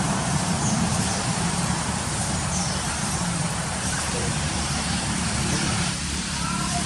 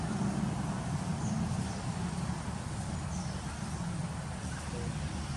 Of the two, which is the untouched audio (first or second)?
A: second